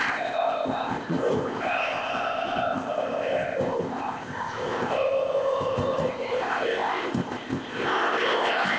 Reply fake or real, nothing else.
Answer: fake